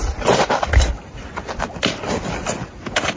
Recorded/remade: recorded